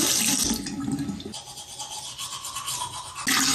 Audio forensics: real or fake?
real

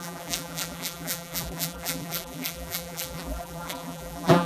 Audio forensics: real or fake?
fake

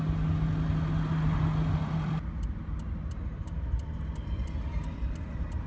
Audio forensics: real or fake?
real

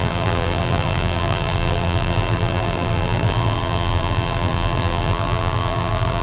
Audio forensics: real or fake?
fake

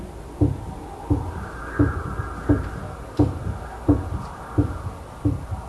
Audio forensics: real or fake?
real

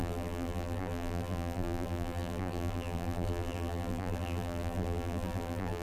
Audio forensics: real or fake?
fake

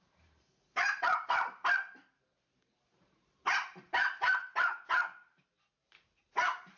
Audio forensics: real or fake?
fake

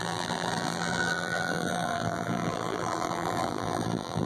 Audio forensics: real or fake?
fake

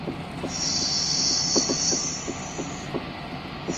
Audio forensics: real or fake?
real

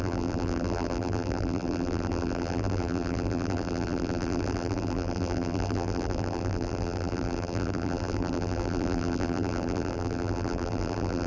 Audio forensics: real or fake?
fake